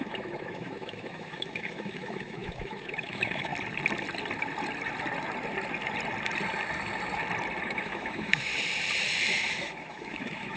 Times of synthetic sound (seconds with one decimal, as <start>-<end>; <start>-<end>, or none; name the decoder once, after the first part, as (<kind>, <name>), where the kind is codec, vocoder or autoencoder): 0.0-3.5 (autoencoder, DAC-VAE); 7.6-8.5; 9.5-10.6